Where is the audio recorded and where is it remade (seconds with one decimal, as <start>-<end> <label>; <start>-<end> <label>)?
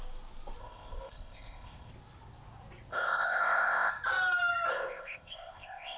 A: 0.0-0.6 recorded; 0.6-1.9 remade; 1.9-2.9 recorded; 2.9-3.9 remade; 3.9-4.7 recorded; 4.7-6.0 remade